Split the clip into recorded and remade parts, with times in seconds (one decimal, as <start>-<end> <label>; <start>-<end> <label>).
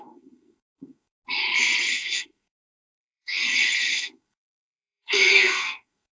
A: 0.0-1.1 remade; 1.1-1.9 recorded; 1.9-3.4 remade; 3.4-4.0 recorded; 4.0-6.1 remade